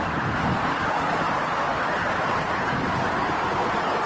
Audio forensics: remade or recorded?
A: recorded